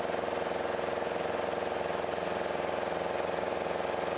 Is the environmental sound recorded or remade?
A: recorded